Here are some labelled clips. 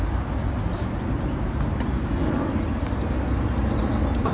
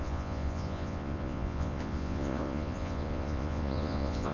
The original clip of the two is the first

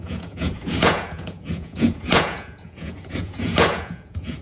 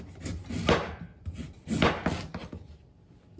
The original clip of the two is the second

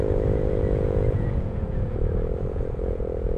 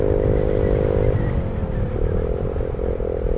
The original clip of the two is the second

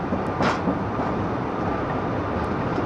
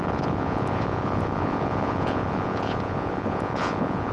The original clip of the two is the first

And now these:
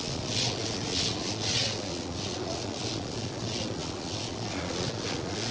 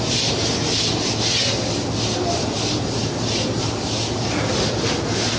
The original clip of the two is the second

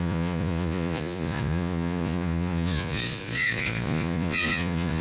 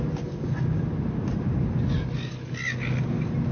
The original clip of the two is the second